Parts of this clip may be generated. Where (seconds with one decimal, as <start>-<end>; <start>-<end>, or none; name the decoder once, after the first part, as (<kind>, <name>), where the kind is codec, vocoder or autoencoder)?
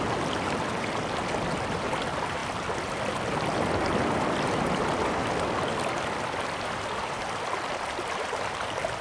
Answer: none